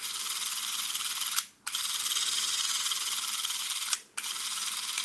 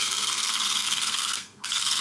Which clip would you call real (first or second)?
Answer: first